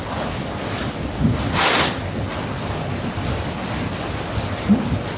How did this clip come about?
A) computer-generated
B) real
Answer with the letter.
B